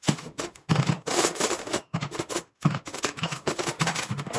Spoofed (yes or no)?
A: yes